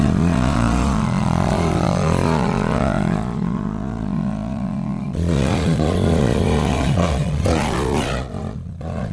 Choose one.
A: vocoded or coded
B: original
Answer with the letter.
A